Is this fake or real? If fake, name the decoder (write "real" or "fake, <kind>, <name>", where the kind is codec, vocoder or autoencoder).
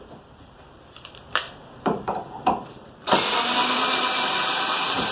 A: fake, vocoder, BigVGAN v2